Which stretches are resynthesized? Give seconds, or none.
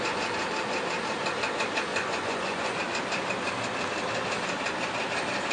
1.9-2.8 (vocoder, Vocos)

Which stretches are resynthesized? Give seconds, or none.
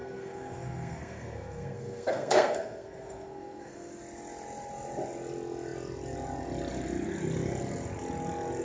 0.0-3.9 (codec, SNAC)